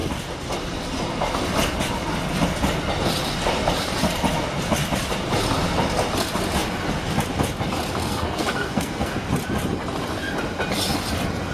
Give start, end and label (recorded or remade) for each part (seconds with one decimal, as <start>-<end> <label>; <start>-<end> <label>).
0.0-8.0 recorded; 8.0-9.1 remade; 9.1-11.5 recorded